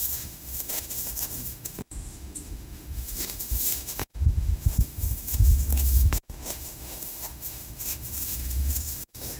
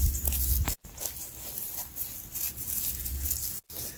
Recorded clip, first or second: second